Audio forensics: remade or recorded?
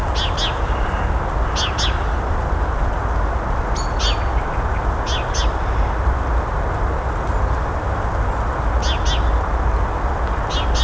recorded